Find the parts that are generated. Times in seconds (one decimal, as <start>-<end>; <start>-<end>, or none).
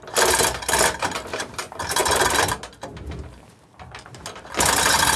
none